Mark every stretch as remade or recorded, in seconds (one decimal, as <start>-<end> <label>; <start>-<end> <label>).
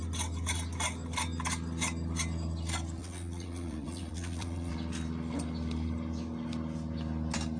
0.0-3.0 recorded; 3.0-4.7 remade; 4.7-7.6 recorded